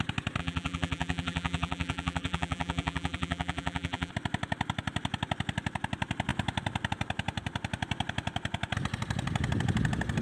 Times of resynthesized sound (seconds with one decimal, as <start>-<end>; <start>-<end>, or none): 0.4-4.1